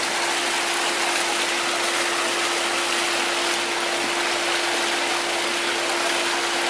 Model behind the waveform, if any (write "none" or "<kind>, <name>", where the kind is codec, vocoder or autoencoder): none